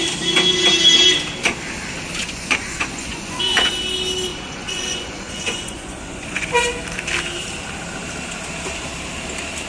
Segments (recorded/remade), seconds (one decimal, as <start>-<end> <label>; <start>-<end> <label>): 0.0-2.2 recorded; 2.2-3.7 remade; 3.7-4.3 recorded; 4.3-6.5 remade; 6.5-9.7 recorded

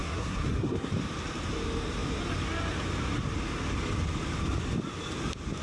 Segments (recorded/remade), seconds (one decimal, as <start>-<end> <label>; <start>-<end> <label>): 0.0-0.9 remade; 0.9-5.6 recorded

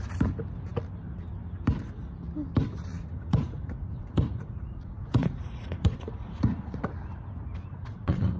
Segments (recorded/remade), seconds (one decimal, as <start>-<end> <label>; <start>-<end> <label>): 0.0-2.9 recorded; 2.9-6.9 remade; 6.9-7.7 recorded; 7.7-8.4 remade